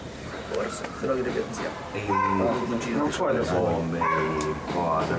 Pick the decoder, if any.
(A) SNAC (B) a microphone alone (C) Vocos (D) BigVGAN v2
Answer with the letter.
B